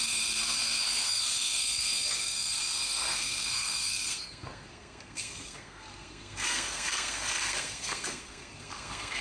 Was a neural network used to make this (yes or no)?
yes